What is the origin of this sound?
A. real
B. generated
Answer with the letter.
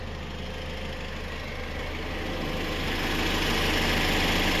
A